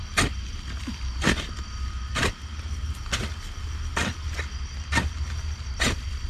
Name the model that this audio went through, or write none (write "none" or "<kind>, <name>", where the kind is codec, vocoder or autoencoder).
none